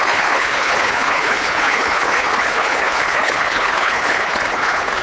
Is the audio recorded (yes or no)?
no